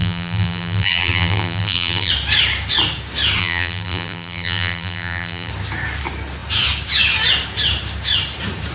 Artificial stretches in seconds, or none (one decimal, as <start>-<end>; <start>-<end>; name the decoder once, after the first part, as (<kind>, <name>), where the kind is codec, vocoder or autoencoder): 0.0-2.1 (vocoder, BigVGAN v2); 3.4-5.5